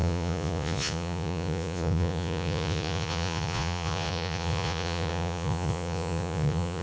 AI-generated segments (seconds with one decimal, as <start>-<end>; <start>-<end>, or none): 0.0-6.8